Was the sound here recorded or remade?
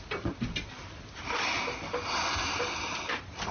recorded